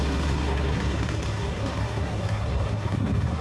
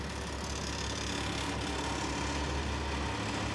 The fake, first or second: first